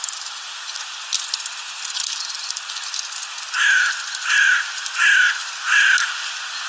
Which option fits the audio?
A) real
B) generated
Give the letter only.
A